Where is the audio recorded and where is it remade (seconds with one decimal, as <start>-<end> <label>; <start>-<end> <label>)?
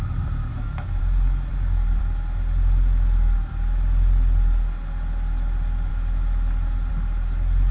0.0-0.5 recorded; 0.5-1.0 remade; 1.0-7.7 recorded